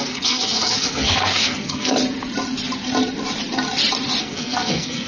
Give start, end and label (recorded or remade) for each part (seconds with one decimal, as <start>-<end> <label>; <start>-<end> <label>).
0.0-2.0 remade; 2.0-4.2 recorded; 4.2-5.1 remade